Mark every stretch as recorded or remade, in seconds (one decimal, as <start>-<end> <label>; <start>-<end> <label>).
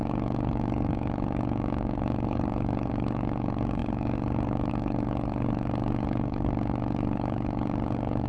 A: 0.0-8.3 remade